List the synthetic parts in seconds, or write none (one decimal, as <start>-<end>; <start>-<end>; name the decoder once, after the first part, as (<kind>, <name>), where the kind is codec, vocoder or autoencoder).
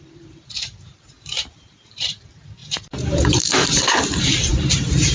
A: 0.0-5.1 (vocoder, BigVGAN v2)